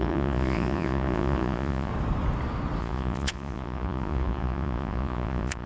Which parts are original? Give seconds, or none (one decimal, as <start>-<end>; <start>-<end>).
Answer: 1.9-2.8